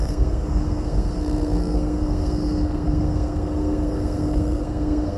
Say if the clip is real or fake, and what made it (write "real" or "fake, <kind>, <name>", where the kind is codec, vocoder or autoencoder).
fake, codec, SNAC